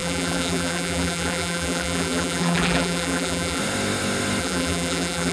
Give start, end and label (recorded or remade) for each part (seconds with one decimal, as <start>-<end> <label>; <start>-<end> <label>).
0.0-3.6 remade; 3.6-4.4 recorded; 4.4-5.3 remade